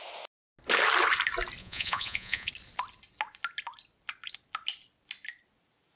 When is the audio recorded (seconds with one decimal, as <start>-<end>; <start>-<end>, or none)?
0.0-1.6; 2.5-6.0